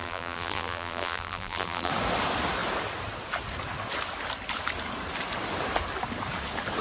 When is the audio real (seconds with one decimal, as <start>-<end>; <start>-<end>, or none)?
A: 1.9-6.8